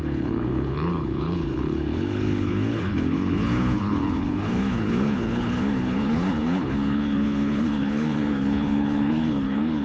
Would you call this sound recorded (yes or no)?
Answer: no